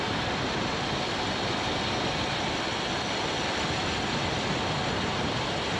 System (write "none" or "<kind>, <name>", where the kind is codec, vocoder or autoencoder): none